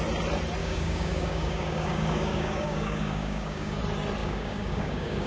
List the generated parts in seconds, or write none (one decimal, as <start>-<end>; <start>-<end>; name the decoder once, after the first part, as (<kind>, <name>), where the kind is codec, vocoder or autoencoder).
0.6-3.8 (codec, DAC); 4.2-5.3